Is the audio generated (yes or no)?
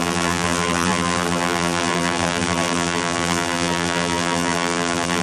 yes